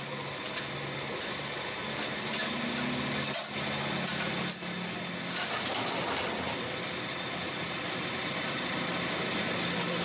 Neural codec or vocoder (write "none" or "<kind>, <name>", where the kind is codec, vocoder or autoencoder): none